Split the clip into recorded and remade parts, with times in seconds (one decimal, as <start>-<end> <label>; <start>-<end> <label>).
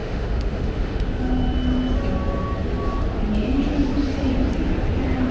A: 0.0-1.2 remade; 1.2-5.3 recorded